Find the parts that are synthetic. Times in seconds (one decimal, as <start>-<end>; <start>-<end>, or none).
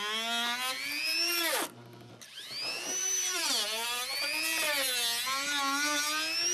3.0-3.5